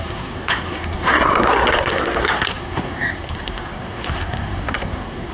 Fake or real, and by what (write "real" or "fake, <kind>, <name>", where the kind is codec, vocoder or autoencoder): fake, codec, SNAC